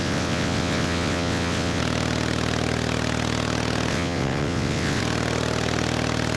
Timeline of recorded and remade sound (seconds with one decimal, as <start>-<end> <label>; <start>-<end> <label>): 0.0-1.8 remade; 1.8-3.9 recorded; 3.9-5.0 remade; 5.0-6.4 recorded